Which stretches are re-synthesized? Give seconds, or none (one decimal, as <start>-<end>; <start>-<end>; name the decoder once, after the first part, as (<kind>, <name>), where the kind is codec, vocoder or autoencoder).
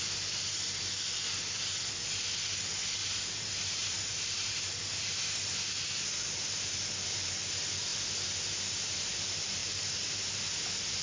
3.0-5.0 (vocoder, BigVGAN v2); 9.6-10.3